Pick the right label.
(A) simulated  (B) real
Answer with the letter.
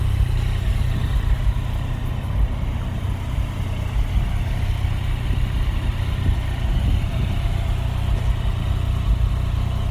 B